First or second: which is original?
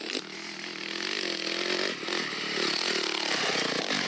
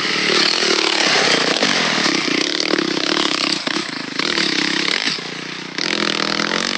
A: first